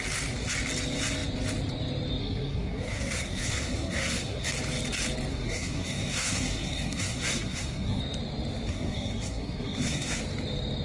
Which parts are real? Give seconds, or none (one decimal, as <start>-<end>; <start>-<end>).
0.0-2.2; 4.5-5.3; 8.0-8.7; 10.2-10.8